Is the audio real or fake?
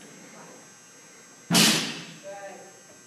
real